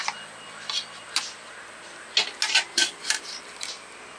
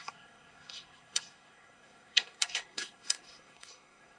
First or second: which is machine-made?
second